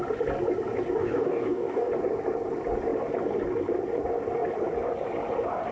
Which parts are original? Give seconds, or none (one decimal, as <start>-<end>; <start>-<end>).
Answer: 0.0-1.0; 1.9-5.7